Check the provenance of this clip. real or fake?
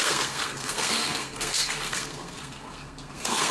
fake